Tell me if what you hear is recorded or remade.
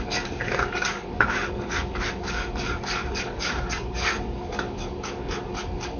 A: remade